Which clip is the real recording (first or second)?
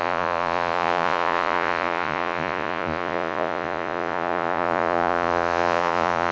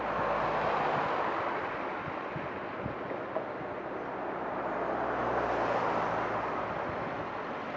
second